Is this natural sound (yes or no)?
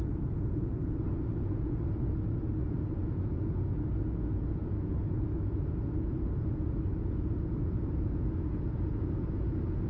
no